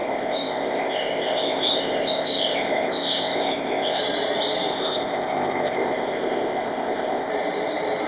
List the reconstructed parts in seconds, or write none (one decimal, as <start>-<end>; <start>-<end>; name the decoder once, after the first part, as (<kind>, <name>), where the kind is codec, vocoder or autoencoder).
0.0-4.0 (codec, ZipCodec); 4.7-7.3